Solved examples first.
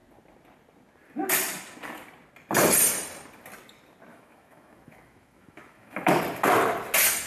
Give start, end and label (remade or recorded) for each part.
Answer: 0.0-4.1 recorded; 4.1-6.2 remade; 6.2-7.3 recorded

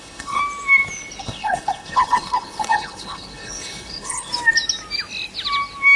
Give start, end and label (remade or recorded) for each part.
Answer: 0.0-0.4 remade; 0.4-1.2 recorded; 1.2-4.3 remade; 4.3-6.0 recorded

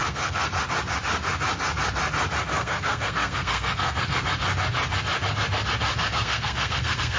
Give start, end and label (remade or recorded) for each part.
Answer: 0.0-0.5 remade; 0.5-2.5 recorded; 2.5-4.2 remade; 4.2-5.9 recorded; 5.9-7.2 remade

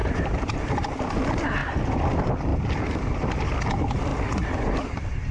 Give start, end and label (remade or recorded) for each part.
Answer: 0.0-0.8 remade; 0.8-1.6 recorded; 1.6-2.1 remade; 2.1-2.5 recorded; 2.5-3.3 remade; 3.3-4.1 recorded; 4.1-5.3 remade